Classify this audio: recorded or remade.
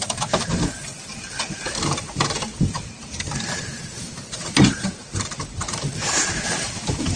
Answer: remade